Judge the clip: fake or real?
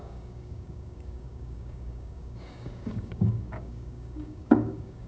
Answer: fake